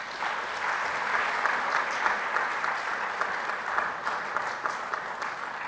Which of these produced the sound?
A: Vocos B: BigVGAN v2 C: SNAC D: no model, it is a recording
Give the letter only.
D